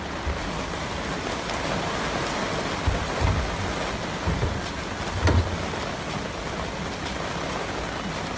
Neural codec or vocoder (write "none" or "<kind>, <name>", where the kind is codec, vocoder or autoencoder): none